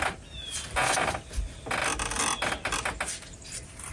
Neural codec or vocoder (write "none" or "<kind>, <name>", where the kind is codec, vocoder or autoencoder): none